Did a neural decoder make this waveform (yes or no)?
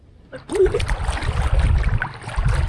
no